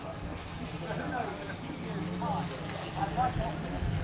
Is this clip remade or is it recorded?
recorded